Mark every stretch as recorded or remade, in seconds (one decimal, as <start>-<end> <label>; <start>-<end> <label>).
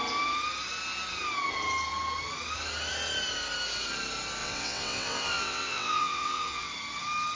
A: 0.0-4.4 recorded; 4.4-6.7 remade; 6.7-7.4 recorded